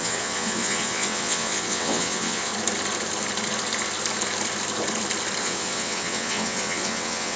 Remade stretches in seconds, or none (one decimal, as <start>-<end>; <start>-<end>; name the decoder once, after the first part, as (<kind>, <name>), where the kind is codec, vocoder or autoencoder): 0.0-2.5 (vocoder, WaveNeXt); 5.4-7.4